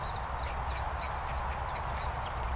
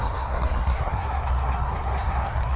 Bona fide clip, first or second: first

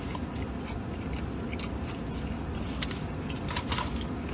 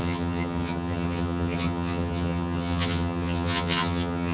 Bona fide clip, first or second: first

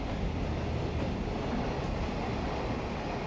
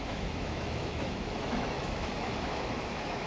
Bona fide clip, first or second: first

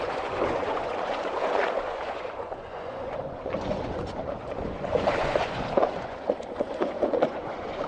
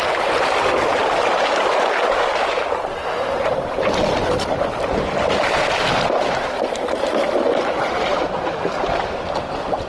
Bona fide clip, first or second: second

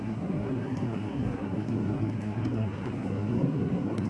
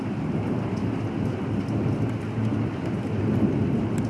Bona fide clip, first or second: second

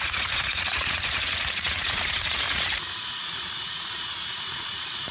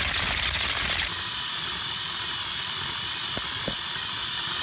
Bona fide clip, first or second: second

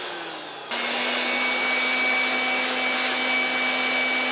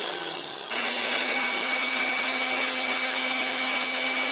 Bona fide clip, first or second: first